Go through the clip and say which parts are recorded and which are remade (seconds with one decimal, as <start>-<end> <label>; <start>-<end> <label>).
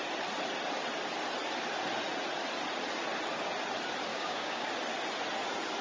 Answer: 0.0-4.1 recorded; 4.1-4.7 remade; 4.7-5.8 recorded